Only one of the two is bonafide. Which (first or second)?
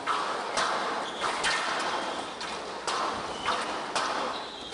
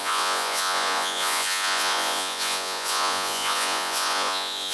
first